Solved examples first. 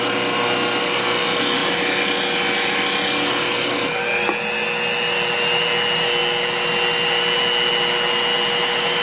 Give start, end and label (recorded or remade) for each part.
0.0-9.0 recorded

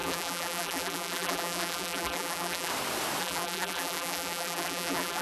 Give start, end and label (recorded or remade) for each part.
0.0-2.7 remade; 2.7-3.2 recorded; 3.2-5.2 remade

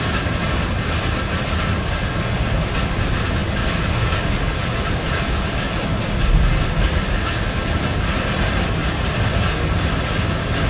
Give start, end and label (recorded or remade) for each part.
0.0-8.8 recorded; 8.8-9.4 remade; 9.4-10.7 recorded

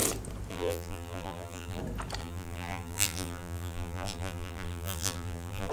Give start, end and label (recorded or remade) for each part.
0.0-0.5 recorded; 0.5-1.8 remade; 1.8-2.2 recorded; 2.2-5.7 remade